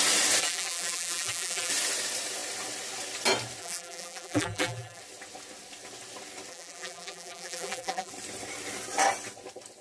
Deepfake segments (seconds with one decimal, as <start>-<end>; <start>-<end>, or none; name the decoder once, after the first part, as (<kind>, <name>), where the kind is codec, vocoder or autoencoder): 0.4-1.7 (vocoder, BigVGAN v2); 3.6-5.0; 6.5-8.1